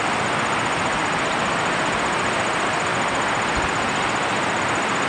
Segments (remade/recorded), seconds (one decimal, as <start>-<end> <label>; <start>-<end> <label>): 0.0-5.1 recorded